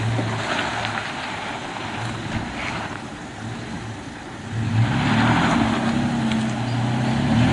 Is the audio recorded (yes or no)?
yes